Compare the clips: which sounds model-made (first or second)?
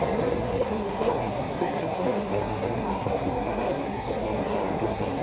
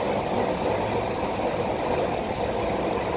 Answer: first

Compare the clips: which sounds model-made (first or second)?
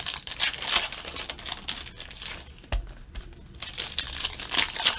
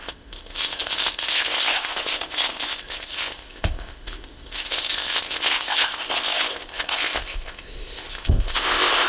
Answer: second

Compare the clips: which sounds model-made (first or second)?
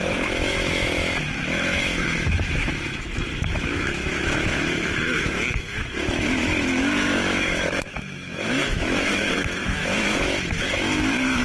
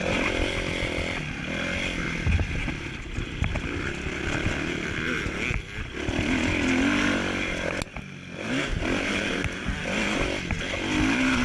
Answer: first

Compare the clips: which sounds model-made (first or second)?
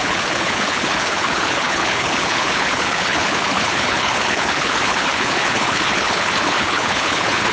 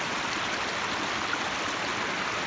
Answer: first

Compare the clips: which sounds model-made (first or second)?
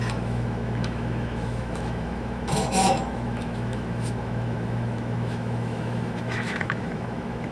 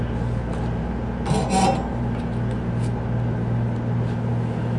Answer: first